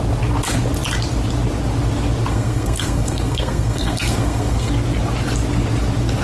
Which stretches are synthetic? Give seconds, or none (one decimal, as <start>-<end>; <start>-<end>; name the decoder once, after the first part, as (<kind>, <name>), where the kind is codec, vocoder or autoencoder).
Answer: 2.3-4.7 (codec, SNAC)